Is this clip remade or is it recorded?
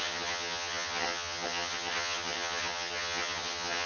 remade